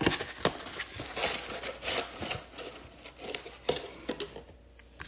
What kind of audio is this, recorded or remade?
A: recorded